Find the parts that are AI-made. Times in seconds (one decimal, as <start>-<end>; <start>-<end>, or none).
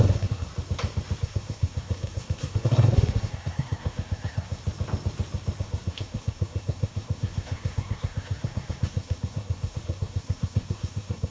0.0-0.5; 1.2-4.6; 5.6-11.3